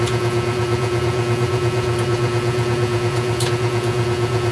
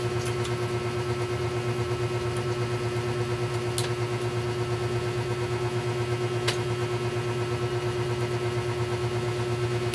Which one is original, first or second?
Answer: second